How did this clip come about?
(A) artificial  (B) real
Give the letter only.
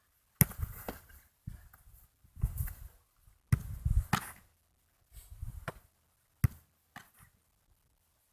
B